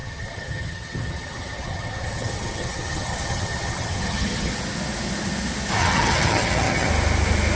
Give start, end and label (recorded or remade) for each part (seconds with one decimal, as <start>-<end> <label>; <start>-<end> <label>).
0.0-4.5 remade; 4.5-5.8 recorded; 5.8-6.9 remade; 6.9-7.5 recorded